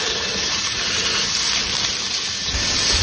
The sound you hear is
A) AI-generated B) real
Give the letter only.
A